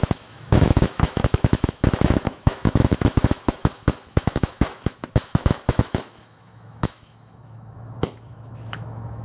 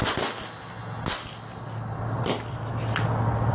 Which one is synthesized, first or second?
first